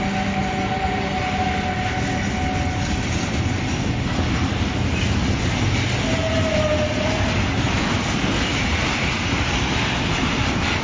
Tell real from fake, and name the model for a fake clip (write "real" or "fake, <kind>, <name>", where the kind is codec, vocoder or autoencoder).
real